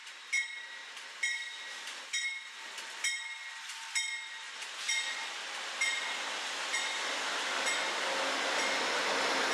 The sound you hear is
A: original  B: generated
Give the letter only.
A